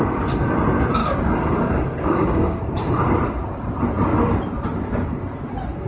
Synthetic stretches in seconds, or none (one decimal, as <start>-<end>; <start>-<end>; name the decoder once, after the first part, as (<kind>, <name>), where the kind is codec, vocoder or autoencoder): 1.0-2.6 (codec, DAC)